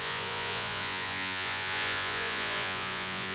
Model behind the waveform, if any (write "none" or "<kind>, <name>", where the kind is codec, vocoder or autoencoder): vocoder, Vocos